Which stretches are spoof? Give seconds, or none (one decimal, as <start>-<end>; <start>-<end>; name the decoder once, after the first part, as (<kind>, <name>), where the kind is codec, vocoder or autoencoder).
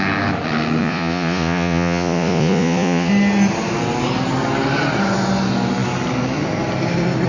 0.8-3.1 (vocoder, Vocos)